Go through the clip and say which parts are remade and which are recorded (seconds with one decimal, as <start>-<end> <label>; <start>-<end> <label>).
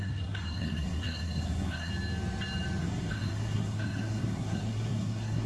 0.0-1.9 remade; 1.9-2.8 recorded; 2.8-5.5 remade